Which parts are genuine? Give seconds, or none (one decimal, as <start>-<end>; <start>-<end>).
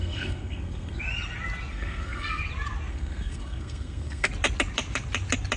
1.0-1.7; 2.4-2.9; 4.3-5.6